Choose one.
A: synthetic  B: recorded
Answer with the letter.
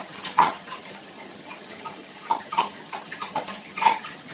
A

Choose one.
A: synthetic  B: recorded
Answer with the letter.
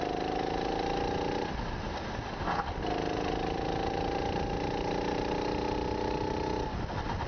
B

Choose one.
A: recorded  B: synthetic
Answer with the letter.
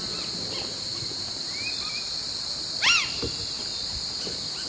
A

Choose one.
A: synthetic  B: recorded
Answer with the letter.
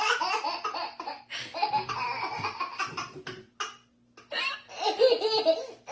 B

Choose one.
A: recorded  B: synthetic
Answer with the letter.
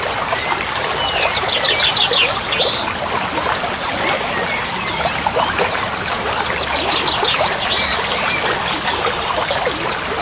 A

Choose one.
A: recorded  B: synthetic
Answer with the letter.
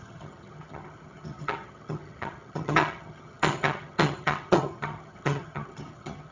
B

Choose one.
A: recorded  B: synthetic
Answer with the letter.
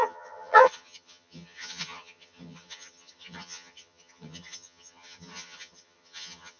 B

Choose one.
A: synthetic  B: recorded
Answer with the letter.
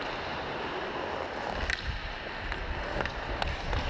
B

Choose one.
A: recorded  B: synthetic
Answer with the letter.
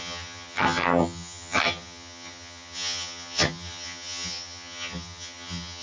B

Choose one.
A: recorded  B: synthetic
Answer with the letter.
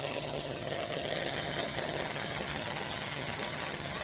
B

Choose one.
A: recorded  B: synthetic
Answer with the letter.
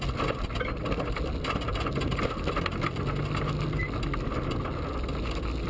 A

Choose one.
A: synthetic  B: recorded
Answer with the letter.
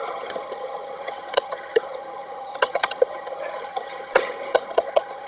A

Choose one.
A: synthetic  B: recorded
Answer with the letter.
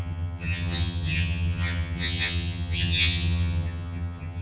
A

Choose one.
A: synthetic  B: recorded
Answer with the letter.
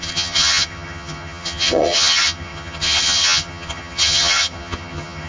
A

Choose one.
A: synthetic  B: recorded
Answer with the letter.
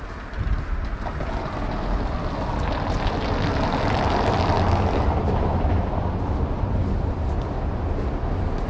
B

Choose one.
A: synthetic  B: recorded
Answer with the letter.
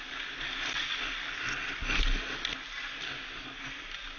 B